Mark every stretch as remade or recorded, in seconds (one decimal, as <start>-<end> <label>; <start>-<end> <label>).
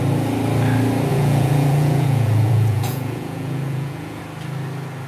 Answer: 0.0-1.1 recorded; 1.1-4.2 remade; 4.2-5.1 recorded